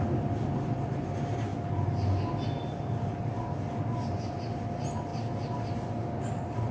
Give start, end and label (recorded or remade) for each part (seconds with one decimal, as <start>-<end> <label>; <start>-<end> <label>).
0.0-1.5 remade; 1.5-4.3 recorded; 4.3-5.1 remade; 5.1-6.2 recorded; 6.2-6.7 remade